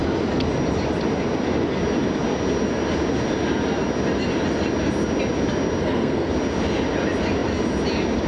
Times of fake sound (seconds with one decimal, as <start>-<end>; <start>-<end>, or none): 5.8-6.3